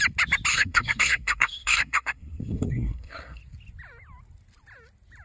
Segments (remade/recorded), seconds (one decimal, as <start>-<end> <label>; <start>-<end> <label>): 0.0-0.5 recorded; 0.5-3.4 remade; 3.4-5.2 recorded